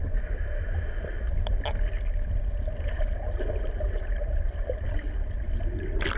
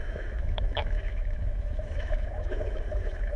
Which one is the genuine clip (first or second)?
first